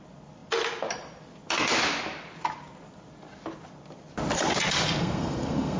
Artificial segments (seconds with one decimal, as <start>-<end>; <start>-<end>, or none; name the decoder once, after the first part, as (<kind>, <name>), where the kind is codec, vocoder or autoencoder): 5.0-5.8 (codec, SNAC)